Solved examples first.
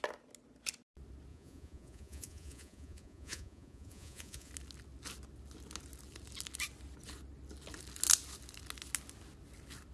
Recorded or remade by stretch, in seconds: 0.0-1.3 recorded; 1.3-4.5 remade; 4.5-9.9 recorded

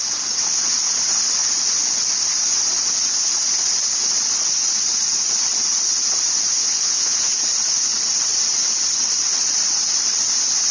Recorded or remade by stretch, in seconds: 0.0-6.6 recorded; 6.6-7.2 remade; 7.2-10.7 recorded